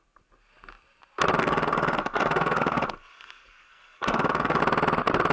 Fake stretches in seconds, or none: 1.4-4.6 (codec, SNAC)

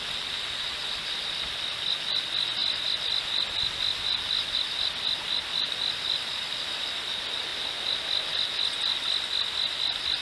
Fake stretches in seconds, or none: none